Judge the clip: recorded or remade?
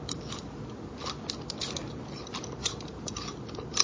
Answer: recorded